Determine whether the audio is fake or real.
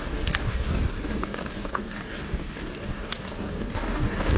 fake